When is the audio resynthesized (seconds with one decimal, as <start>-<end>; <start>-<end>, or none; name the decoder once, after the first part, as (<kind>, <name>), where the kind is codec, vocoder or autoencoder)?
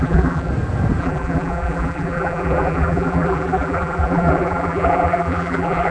0.0-0.5 (vocoder, BigVGAN v2); 1.0-5.9